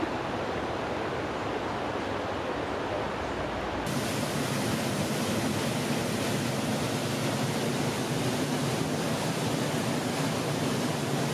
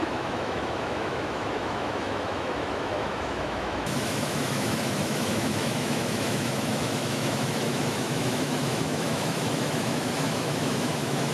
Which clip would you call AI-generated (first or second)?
second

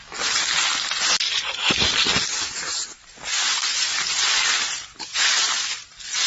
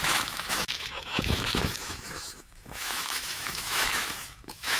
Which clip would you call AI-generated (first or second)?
second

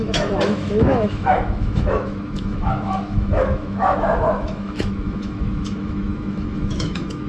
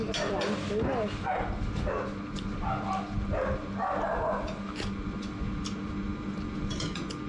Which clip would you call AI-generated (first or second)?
first